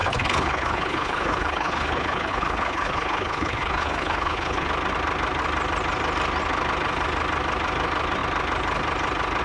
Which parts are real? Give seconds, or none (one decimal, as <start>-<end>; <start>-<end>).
4.7-9.4